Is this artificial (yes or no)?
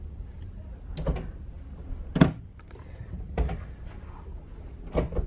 no